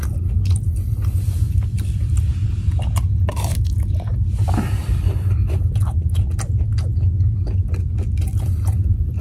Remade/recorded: recorded